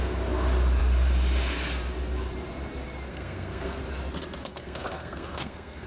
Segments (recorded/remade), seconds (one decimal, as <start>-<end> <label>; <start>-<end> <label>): 0.0-3.1 recorded; 3.1-3.8 remade; 3.8-4.4 recorded; 4.4-5.9 remade